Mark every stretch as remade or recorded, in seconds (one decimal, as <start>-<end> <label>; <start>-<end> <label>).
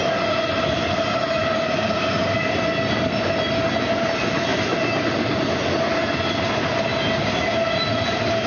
0.0-8.5 recorded